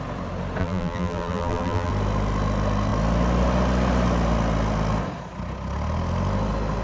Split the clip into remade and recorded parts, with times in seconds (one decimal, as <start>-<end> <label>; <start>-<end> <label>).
0.0-0.6 recorded; 0.6-1.9 remade; 1.9-6.8 recorded